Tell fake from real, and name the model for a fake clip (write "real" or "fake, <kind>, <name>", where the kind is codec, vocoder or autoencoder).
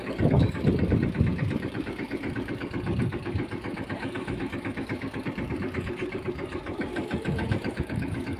fake, codec, DAC